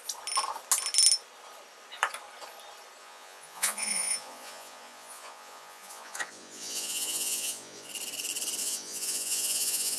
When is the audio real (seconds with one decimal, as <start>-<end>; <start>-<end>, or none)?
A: 0.0-3.0; 7.9-8.6